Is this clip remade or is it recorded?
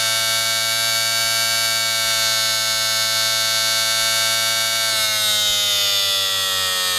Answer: recorded